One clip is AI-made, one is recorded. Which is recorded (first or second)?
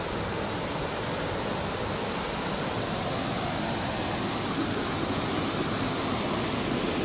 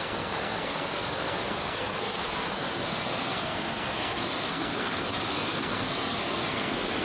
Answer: first